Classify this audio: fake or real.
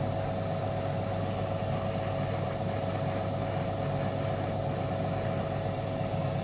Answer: real